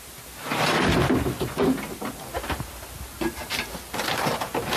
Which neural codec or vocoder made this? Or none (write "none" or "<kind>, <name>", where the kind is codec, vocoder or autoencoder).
none